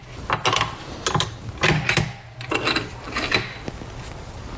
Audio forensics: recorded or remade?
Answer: recorded